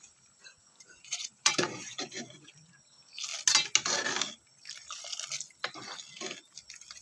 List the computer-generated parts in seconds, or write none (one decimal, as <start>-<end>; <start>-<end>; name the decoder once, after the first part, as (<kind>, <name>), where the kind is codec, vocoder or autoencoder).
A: 0.4-2.5 (vocoder, Vocos)